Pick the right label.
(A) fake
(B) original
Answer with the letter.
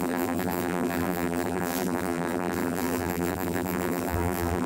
A